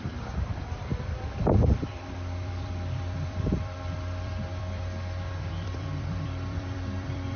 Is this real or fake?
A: fake